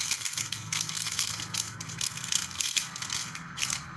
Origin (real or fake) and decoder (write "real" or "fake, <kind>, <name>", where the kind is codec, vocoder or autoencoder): fake, codec, SNAC